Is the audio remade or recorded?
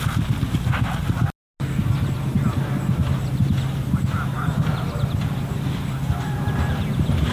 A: recorded